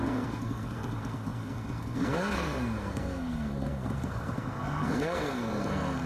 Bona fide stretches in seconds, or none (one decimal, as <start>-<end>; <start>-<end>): none